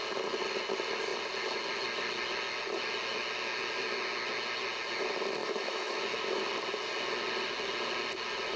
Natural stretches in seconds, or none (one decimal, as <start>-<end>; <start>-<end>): 0.0-5.4; 6.0-8.6